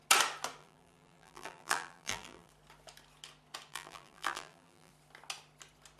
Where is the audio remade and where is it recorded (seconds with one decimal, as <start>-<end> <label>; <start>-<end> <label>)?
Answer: 0.0-0.6 recorded; 0.6-2.5 remade; 2.5-3.7 recorded; 3.7-4.9 remade; 4.9-6.0 recorded